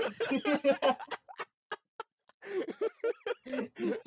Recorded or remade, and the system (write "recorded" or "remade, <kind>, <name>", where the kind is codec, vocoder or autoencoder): recorded